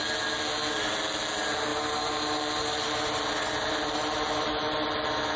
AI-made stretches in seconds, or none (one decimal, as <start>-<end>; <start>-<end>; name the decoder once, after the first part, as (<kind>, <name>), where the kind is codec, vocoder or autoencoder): 1.7-4.9 (vocoder, BigVGAN v2)